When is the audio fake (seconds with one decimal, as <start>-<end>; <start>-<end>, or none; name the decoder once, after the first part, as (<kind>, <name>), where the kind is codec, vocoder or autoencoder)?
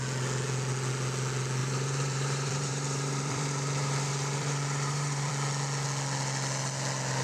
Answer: 1.6-5.3 (vocoder, BigVGAN v2)